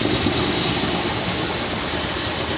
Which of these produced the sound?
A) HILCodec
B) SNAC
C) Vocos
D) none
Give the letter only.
D